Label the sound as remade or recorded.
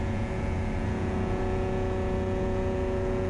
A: remade